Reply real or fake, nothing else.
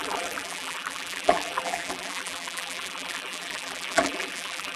fake